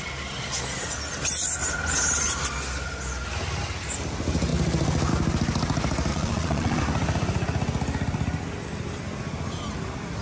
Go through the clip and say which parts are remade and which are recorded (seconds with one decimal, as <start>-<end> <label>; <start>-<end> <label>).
0.0-6.1 recorded; 6.1-6.8 remade; 6.8-10.2 recorded